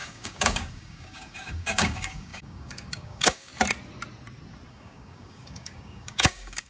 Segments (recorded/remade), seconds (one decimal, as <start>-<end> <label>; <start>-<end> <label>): 0.0-3.5 remade; 3.5-4.7 recorded; 4.7-6.7 remade

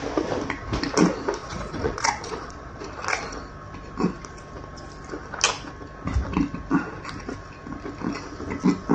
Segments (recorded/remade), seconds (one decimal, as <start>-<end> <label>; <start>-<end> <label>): 0.0-1.4 recorded; 1.4-2.8 remade; 2.8-8.9 recorded

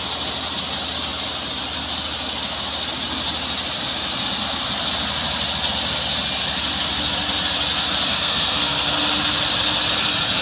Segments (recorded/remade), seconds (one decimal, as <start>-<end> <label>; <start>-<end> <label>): 0.0-8.1 recorded; 8.1-8.9 remade; 8.9-10.4 recorded

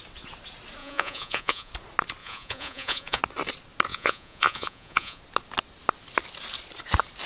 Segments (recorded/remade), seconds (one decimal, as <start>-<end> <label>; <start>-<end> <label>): 0.0-0.8 recorded; 0.8-1.7 remade; 1.7-2.2 recorded; 2.2-3.2 remade; 3.2-3.9 recorded; 3.9-5.2 remade; 5.2-7.3 recorded

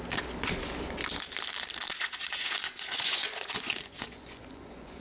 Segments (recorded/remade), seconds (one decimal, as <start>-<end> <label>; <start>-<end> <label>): 0.0-1.9 recorded; 1.9-5.0 remade